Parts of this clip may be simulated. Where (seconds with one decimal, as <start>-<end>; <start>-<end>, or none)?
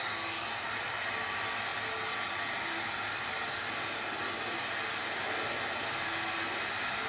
none